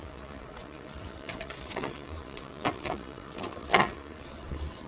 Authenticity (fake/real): fake